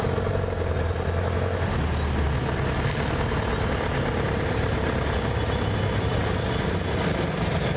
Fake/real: real